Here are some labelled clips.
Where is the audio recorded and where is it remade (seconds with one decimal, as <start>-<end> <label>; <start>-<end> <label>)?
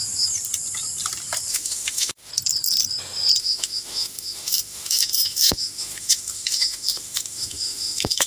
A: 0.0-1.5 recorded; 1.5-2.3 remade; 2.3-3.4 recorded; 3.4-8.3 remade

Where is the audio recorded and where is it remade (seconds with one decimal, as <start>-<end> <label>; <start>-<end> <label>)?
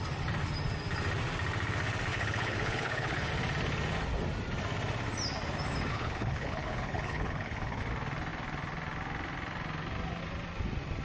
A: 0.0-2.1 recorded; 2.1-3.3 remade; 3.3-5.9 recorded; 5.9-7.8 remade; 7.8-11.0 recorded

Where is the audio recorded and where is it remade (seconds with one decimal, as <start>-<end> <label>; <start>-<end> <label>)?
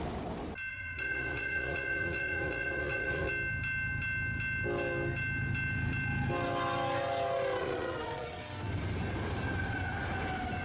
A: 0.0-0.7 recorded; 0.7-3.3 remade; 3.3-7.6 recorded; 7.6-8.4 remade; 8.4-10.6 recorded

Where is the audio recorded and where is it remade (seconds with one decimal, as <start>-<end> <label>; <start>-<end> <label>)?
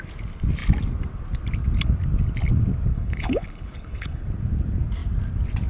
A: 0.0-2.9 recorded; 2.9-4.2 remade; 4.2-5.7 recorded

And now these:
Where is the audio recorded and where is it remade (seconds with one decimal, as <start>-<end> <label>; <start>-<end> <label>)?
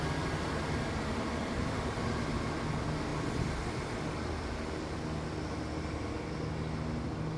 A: 0.0-1.4 recorded; 1.4-2.2 remade; 2.2-7.4 recorded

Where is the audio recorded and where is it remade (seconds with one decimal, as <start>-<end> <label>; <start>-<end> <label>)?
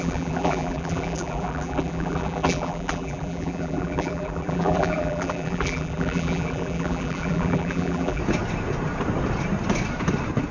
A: 0.0-8.2 remade; 8.2-10.5 recorded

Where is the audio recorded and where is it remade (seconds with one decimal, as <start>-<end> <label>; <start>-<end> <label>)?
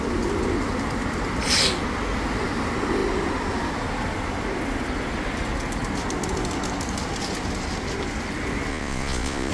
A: 0.0-8.7 recorded; 8.7-9.5 remade